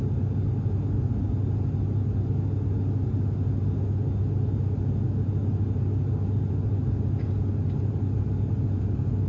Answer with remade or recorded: recorded